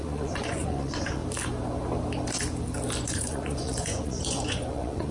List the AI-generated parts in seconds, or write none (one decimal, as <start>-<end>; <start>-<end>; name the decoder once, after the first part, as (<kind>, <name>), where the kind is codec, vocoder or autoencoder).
0.0-1.2 (vocoder, Vocos); 3.0-5.1